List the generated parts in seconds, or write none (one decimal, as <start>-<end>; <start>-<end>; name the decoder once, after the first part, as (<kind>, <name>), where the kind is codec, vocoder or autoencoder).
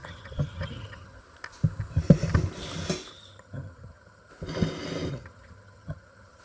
0.0-1.2 (vocoder, HiFi-GAN); 3.1-4.3; 5.1-6.4